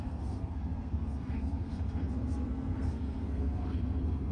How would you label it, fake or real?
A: fake